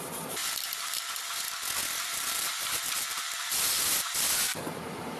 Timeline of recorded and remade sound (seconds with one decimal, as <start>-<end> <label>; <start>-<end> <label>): 0.0-0.4 recorded; 0.4-1.2 remade; 1.2-1.8 recorded; 1.8-5.2 remade